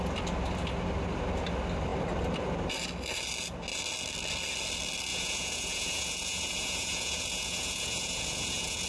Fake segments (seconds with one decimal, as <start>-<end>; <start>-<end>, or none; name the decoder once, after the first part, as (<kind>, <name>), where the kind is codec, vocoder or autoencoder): 5.1-8.9 (vocoder, Vocos)